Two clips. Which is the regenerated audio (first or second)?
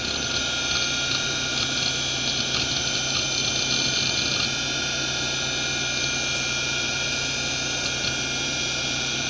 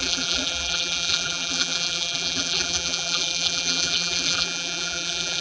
second